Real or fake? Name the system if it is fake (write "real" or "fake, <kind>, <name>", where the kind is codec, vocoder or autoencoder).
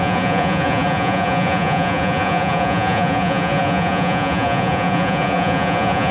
fake, vocoder, Vocos